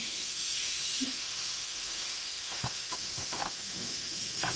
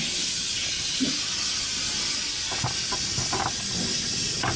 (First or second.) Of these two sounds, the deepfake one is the first